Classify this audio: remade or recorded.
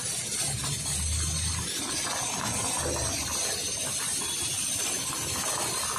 recorded